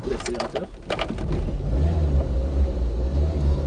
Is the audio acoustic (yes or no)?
yes